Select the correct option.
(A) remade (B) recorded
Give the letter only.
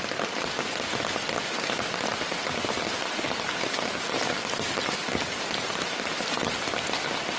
B